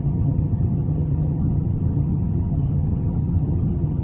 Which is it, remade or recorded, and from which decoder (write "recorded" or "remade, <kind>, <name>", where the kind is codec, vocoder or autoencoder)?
remade, vocoder, HiFi-GAN